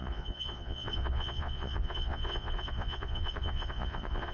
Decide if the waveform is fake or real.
fake